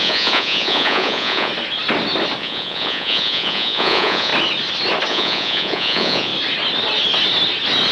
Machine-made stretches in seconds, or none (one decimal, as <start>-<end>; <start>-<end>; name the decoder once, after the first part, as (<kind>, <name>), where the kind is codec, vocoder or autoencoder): 0.0-1.5 (vocoder, Vocos); 2.4-4.3; 5.1-6.3